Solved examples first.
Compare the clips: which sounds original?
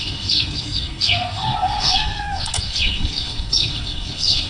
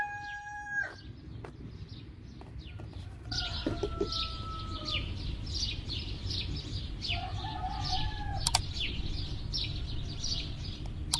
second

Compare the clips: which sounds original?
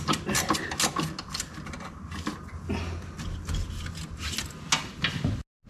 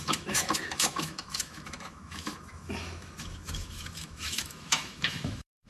first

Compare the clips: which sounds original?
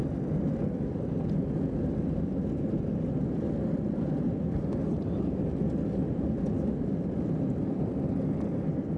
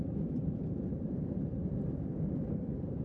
first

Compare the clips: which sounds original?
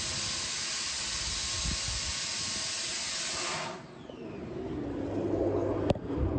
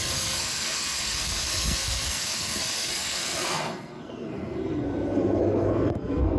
first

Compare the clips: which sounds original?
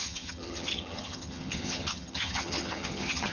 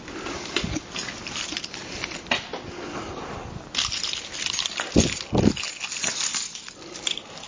second